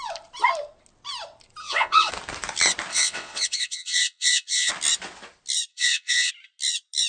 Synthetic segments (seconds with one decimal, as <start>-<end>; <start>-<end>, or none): 1.6-2.1; 2.9-4.7; 5.7-6.3